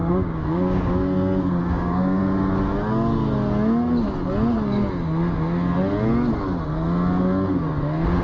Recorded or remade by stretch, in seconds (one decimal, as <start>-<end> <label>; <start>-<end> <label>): 0.0-2.2 remade; 2.2-8.2 recorded